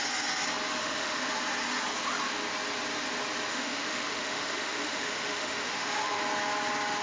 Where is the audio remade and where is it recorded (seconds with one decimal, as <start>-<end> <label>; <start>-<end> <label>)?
0.0-0.8 recorded; 0.8-1.3 remade; 1.3-3.5 recorded; 3.5-6.2 remade; 6.2-7.0 recorded